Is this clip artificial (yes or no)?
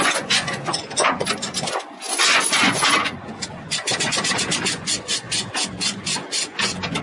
yes